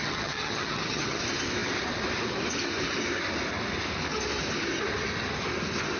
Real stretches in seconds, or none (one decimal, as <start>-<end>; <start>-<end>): 1.2-6.0